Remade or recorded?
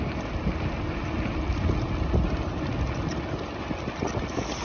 remade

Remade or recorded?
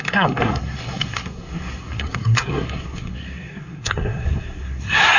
remade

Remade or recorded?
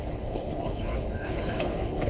remade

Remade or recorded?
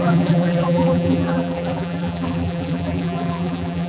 remade